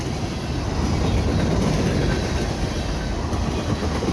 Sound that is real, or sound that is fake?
real